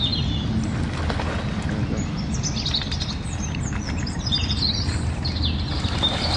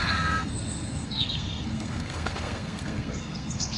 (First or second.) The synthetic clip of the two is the second